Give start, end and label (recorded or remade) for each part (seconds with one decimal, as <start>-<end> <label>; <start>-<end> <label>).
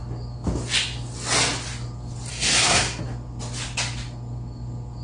0.0-2.3 recorded; 2.3-3.0 remade; 3.0-5.0 recorded